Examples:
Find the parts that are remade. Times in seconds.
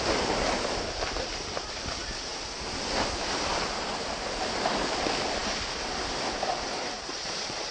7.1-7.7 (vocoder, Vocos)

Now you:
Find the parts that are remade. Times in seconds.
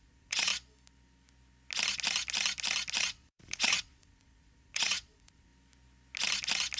0.0-0.5 (vocoder, Vocos); 3.0-5.5